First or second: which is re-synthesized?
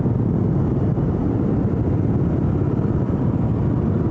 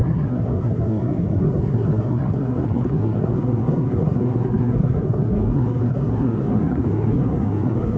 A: second